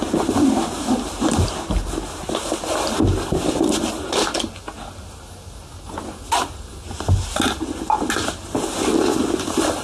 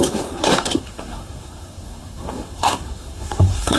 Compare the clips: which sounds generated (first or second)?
second